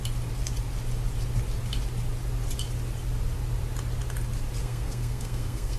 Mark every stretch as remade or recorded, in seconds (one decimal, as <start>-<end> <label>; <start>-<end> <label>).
0.0-4.6 recorded; 4.6-5.8 remade